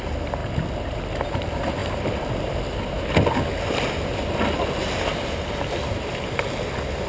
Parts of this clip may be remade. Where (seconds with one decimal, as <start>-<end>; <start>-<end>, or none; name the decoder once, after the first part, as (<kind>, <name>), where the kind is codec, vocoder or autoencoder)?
none